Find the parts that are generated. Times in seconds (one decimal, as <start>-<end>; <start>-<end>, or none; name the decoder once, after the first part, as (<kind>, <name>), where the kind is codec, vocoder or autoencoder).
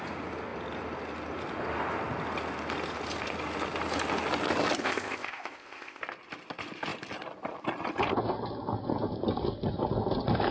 4.8-6.0 (codec, ZipCodec)